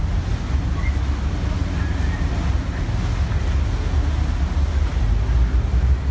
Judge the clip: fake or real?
real